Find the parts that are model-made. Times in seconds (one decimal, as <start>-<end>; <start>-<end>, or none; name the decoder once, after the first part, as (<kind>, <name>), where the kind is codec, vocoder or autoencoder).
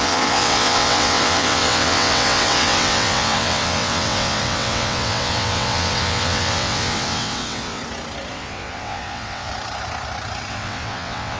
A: 0.0-7.8 (vocoder, WaveNeXt); 8.3-9.5; 10.5-11.4